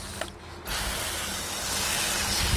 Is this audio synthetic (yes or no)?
no